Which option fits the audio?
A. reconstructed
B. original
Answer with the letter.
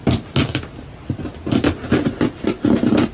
B